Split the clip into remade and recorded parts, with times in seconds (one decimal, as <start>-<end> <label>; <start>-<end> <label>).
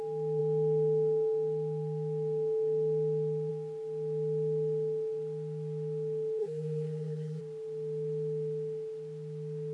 0.0-6.4 recorded; 6.4-7.4 remade; 7.4-9.7 recorded